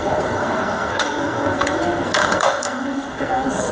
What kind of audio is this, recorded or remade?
remade